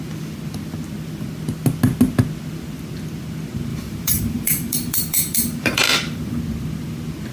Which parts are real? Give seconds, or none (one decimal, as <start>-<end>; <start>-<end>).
0.0-3.7; 6.4-7.3